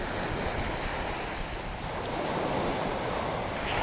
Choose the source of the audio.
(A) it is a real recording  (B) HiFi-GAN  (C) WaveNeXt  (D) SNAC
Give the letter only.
A